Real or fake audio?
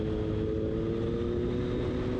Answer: real